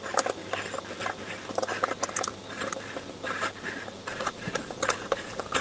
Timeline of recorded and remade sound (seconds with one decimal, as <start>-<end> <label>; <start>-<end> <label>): 0.0-4.1 recorded; 4.1-5.6 remade